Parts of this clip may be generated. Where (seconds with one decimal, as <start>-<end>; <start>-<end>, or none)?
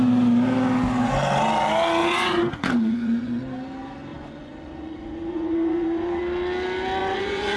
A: 2.0-3.4; 4.1-6.2; 7.0-7.6